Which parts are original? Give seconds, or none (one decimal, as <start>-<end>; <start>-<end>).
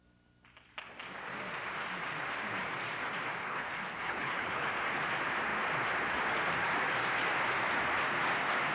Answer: 0.0-3.4; 4.7-8.7